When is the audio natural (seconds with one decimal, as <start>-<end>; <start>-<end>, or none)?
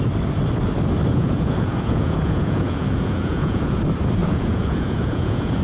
0.0-1.1; 3.8-4.2